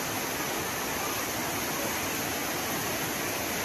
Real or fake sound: real